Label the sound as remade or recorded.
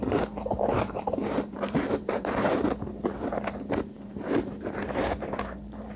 remade